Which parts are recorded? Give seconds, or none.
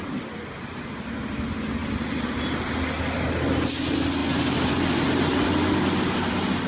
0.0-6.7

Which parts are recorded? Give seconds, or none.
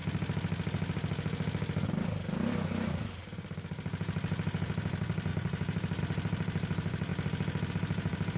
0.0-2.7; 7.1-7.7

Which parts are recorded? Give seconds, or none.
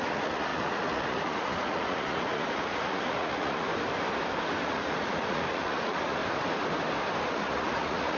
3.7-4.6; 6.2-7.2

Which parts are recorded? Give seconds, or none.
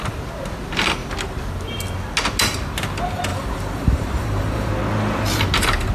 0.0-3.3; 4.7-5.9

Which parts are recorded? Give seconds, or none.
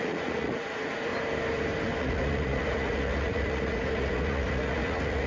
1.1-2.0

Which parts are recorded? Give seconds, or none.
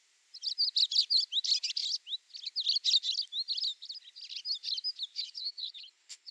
0.0-5.1